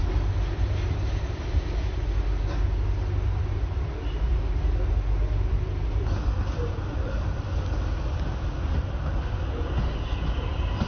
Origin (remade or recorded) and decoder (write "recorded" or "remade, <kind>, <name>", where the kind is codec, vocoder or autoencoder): recorded